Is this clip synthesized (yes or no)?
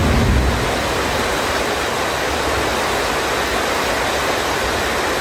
no